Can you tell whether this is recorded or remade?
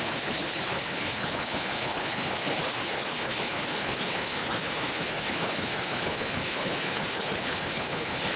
remade